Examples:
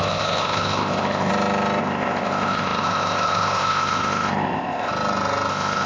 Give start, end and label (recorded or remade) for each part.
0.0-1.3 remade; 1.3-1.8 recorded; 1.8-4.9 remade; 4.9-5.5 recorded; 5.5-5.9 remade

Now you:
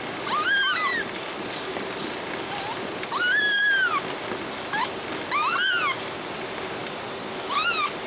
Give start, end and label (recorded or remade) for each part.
0.0-8.1 recorded

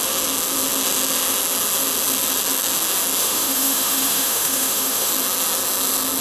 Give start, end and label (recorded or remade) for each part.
0.0-3.2 recorded; 3.2-5.1 remade; 5.1-6.2 recorded

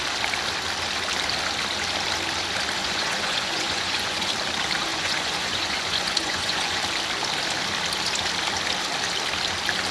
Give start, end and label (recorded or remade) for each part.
0.0-2.8 recorded; 2.8-4.3 remade; 4.3-4.9 recorded; 4.9-6.8 remade; 6.8-9.9 recorded